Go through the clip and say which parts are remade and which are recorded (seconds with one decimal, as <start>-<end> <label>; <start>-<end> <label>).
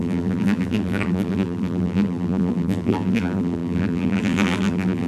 0.0-5.1 remade